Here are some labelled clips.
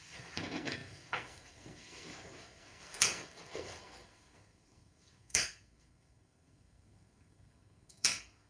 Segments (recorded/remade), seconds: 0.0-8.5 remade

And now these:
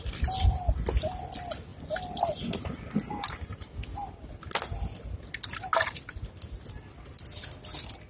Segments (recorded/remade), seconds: 0.0-8.1 recorded

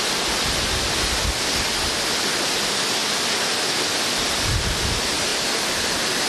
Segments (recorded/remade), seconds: 0.0-6.3 recorded

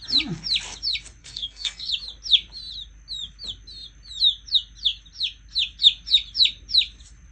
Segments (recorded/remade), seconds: 0.0-1.2 recorded; 1.2-1.9 remade; 1.9-7.3 recorded

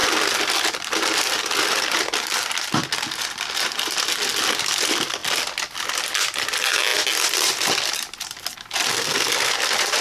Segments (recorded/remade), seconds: 0.0-8.9 recorded; 8.9-9.5 remade; 9.5-10.0 recorded

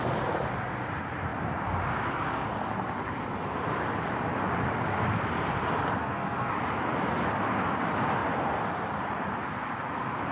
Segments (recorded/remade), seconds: 0.0-6.0 recorded; 6.0-6.5 remade; 6.5-10.3 recorded

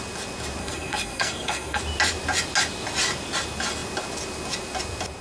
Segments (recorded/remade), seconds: 0.0-0.6 recorded; 0.6-1.8 remade; 1.8-5.2 recorded

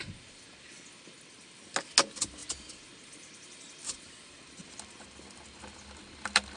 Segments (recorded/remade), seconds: 0.0-6.6 recorded